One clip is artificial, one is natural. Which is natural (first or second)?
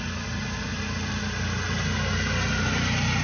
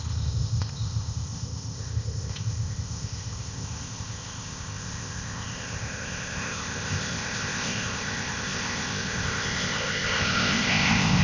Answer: first